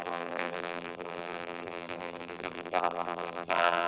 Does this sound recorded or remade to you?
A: remade